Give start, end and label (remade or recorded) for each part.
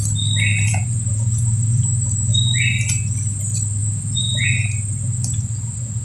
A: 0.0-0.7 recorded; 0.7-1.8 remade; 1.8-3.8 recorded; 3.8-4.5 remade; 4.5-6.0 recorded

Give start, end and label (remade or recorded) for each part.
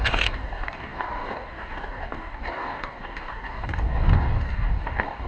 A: 0.0-5.3 remade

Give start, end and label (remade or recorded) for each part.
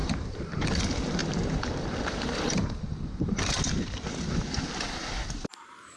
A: 0.0-0.6 remade; 0.6-6.0 recorded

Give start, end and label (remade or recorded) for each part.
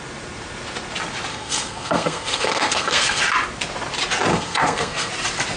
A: 0.0-1.3 recorded; 1.3-3.2 remade; 3.2-4.3 recorded; 4.3-5.1 remade; 5.1-5.6 recorded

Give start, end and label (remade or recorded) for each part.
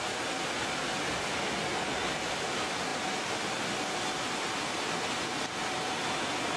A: 0.0-6.6 recorded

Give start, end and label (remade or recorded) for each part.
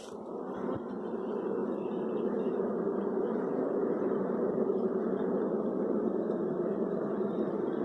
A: 0.0-7.8 remade